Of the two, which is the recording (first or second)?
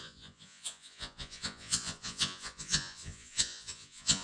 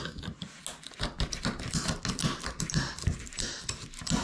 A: second